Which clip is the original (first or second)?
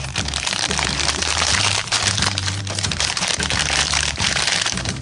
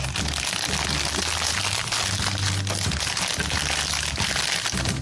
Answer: second